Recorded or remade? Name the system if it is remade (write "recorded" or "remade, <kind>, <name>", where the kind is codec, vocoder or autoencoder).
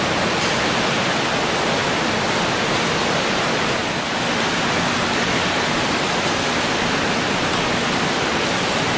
recorded